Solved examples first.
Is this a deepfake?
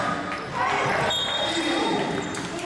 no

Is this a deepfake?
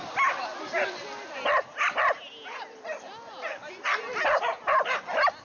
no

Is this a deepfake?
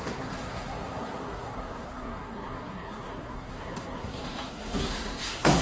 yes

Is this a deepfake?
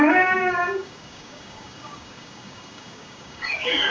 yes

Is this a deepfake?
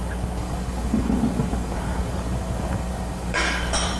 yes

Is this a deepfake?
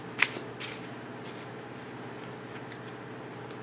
no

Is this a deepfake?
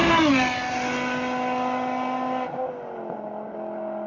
no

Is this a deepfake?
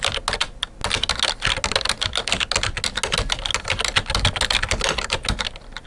no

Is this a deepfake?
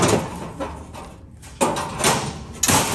no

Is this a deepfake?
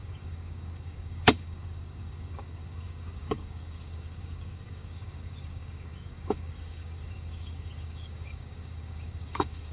yes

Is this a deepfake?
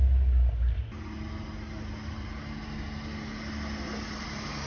no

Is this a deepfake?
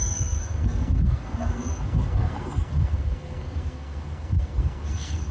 yes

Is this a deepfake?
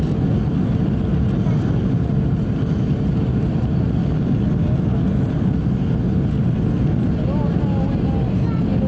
no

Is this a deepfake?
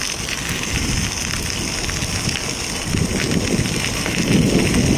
no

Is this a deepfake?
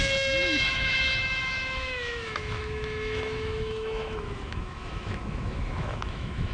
yes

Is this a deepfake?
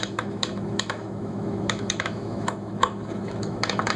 yes